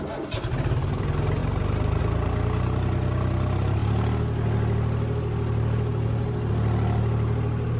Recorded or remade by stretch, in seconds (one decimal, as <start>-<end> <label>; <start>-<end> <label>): 0.0-7.8 recorded